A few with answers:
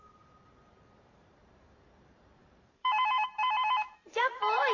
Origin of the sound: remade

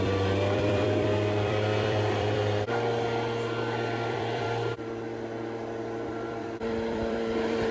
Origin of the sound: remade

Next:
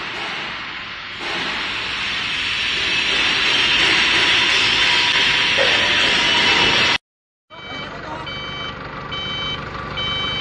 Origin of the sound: recorded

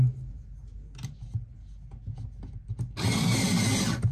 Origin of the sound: recorded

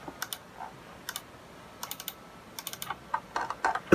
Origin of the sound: recorded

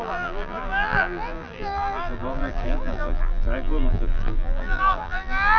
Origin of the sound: remade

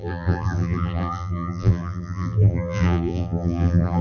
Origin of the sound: remade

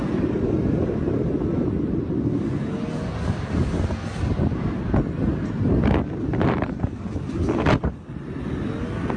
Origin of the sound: recorded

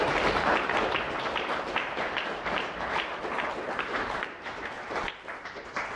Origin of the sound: remade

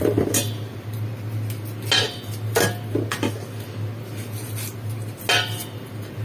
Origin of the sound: recorded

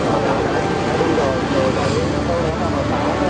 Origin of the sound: recorded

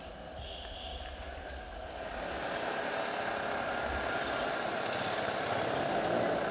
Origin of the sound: recorded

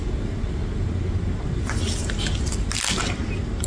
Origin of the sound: recorded